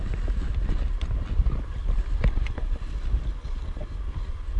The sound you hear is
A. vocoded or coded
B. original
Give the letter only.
B